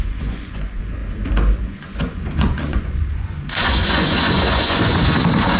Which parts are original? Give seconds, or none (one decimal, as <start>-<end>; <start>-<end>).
1.0-1.6